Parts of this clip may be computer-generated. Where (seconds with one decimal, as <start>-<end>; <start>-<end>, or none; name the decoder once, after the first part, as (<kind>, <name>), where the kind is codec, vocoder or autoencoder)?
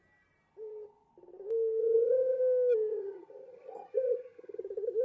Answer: 1.8-2.4 (vocoder, HiFi-GAN); 2.9-4.6